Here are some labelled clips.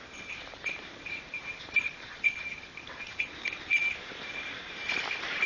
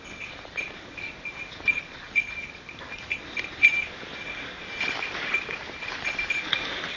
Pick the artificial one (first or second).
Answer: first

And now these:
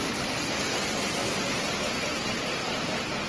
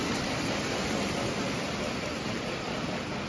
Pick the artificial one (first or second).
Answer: second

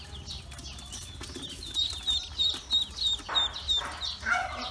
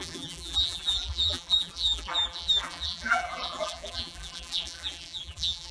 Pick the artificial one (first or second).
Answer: second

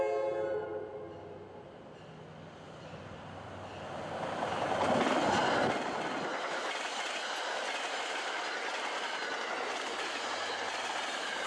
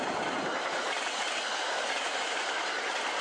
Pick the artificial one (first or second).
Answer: second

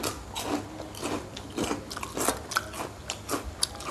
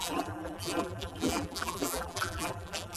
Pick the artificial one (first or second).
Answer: second